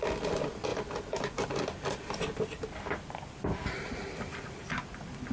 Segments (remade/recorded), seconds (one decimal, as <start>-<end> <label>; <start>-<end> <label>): 0.0-5.3 recorded